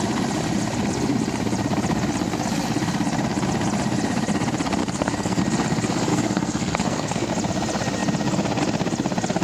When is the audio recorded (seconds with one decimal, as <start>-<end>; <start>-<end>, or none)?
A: 0.0-4.8; 5.4-6.1; 7.3-9.4

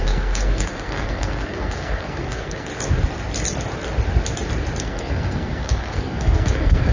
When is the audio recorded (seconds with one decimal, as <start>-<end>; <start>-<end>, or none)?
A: 2.7-4.8

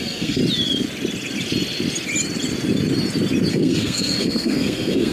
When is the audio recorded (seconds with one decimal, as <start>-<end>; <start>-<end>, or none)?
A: 0.4-3.5

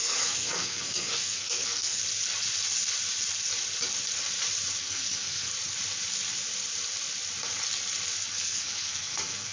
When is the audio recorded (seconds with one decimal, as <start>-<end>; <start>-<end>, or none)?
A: 2.0-4.8; 5.5-8.3

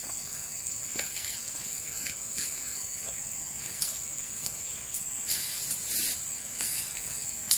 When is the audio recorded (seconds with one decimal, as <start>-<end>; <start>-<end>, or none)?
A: 5.6-6.3

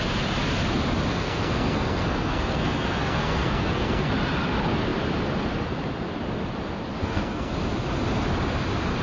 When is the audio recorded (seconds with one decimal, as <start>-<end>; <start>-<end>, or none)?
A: 0.0-1.1; 4.1-7.0; 7.5-9.0